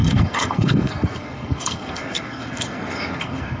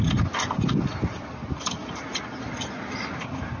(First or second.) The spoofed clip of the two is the first